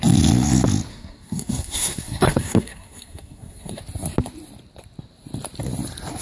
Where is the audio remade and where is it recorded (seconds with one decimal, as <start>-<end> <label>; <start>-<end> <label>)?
0.0-0.9 recorded; 0.9-3.8 remade; 3.8-6.2 recorded